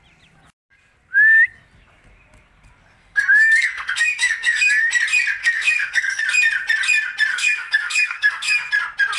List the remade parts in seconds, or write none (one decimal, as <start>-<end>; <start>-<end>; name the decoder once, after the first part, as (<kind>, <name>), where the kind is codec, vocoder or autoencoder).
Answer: 3.0-4.9 (codec, SNAC); 5.4-6.2; 7.3-8.7